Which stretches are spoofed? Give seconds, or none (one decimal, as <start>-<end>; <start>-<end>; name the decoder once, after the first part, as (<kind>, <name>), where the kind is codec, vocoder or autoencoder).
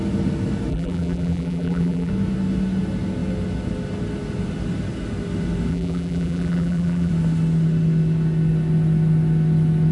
0.7-2.1 (vocoder, BigVGAN v2); 5.7-7.1